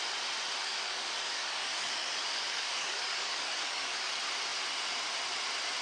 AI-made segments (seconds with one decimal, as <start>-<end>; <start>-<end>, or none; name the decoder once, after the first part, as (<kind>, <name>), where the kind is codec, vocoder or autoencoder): 0.6-4.1 (codec, DAC)